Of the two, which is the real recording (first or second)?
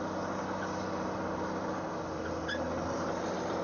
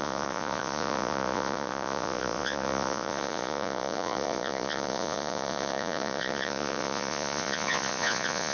first